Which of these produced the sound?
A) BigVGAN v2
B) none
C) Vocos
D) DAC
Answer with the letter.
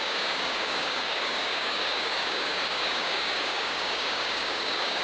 D